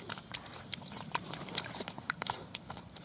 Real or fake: fake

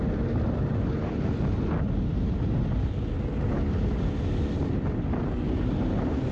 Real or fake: real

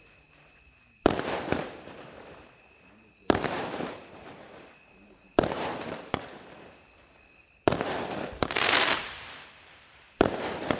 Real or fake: fake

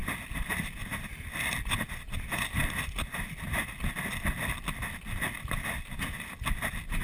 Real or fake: real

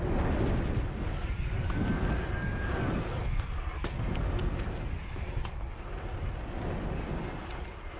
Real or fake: real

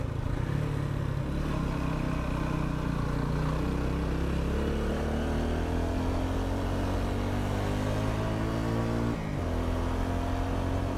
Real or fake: real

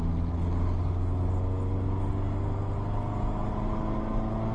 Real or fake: real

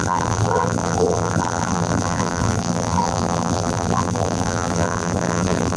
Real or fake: fake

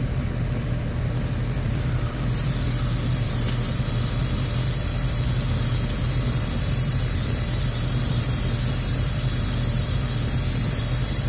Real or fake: fake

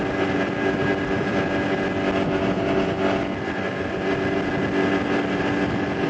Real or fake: real